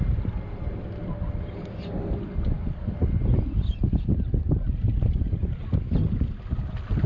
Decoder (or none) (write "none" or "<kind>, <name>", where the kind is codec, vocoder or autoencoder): none